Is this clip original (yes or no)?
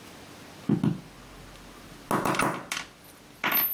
yes